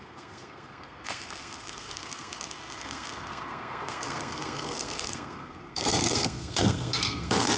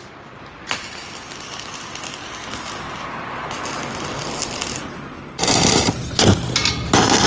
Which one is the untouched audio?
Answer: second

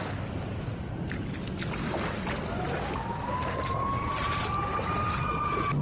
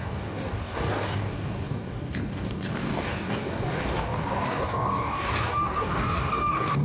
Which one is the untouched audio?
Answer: first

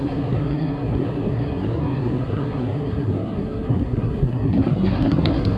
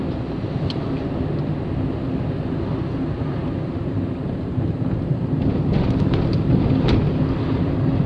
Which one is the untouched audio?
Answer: second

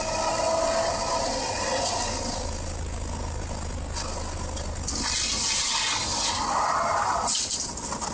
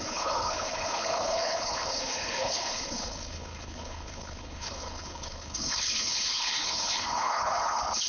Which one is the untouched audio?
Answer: first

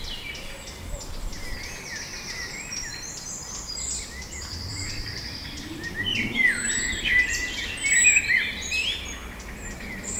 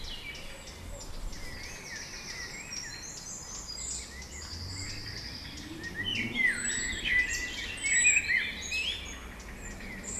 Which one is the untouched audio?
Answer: second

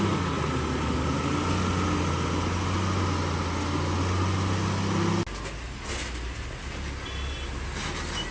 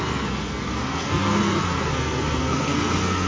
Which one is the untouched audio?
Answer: first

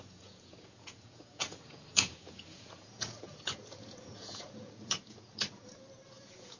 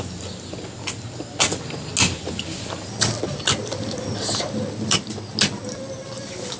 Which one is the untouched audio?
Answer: second